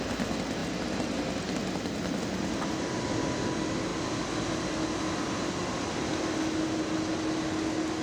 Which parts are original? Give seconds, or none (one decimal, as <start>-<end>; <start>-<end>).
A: 0.0-8.0